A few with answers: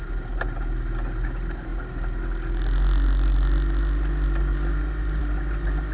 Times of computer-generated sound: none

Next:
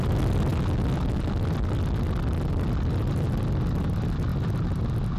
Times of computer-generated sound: none

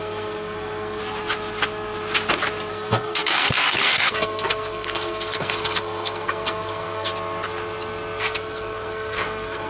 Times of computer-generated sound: 0.0-1.0 (codec, SNAC); 2.7-7.1; 8.2-9.7

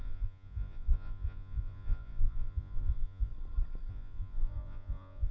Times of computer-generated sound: 0.0-3.3 (vocoder, Vocos); 3.9-5.3

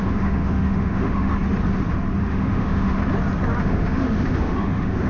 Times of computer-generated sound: 0.0-1.3 (autoencoder, DAC-VAE); 2.2-3.0; 3.6-5.1

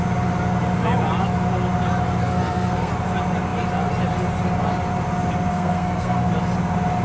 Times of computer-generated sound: 2.2-2.9 (codec, SNAC); 5.5-6.3